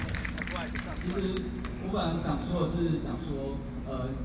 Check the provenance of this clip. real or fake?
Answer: real